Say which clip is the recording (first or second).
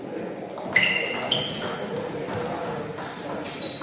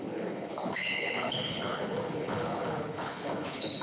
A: first